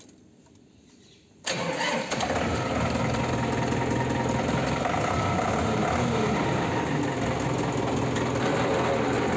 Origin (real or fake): real